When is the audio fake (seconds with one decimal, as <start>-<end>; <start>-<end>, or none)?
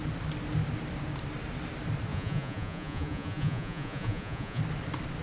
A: 2.1-4.6